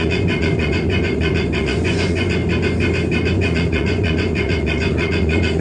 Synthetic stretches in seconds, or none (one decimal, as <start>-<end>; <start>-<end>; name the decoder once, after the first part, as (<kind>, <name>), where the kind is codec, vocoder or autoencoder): 0.0-2.4 (vocoder, Vocos); 3.3-5.6